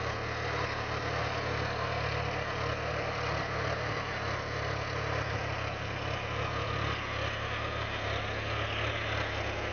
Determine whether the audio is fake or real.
real